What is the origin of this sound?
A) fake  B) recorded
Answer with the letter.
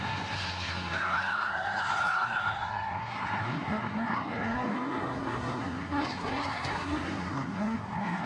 A